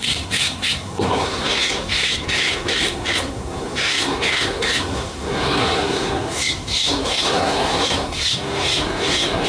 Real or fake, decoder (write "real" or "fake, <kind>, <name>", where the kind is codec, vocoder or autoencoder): fake, codec, SNAC